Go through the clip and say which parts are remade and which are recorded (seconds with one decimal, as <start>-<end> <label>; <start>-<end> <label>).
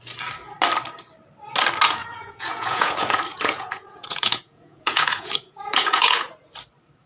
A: 0.0-2.0 recorded; 2.0-6.3 remade; 6.3-7.1 recorded